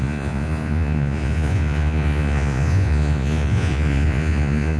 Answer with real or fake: fake